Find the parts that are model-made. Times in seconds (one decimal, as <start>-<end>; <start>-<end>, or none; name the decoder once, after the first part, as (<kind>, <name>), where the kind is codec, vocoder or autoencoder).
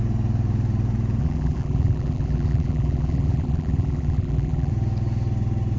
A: 1.2-4.7 (vocoder, BigVGAN v2)